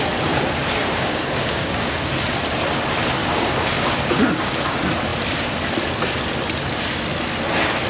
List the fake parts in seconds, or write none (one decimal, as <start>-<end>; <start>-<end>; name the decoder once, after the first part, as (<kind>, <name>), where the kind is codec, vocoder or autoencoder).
0.8-2.1 (codec, DAC); 3.2-4.5